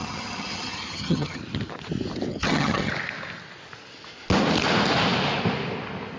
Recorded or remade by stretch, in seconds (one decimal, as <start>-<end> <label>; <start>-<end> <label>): 0.0-1.4 remade; 1.4-2.3 recorded; 2.3-2.9 remade; 2.9-6.2 recorded